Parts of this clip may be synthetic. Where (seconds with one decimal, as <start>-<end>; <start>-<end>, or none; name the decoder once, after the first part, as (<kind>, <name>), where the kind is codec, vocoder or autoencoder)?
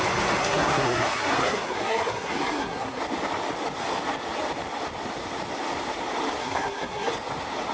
0.4-3.0 (codec, SNAC); 6.4-7.1